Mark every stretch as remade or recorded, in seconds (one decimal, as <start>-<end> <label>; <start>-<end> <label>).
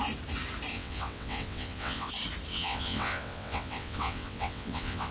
0.0-0.7 recorded; 0.7-2.1 remade; 2.1-2.5 recorded; 2.5-5.1 remade